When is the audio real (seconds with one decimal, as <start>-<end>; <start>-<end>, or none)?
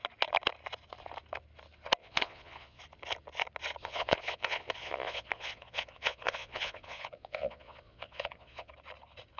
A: 0.0-2.0; 2.8-3.8; 8.7-9.4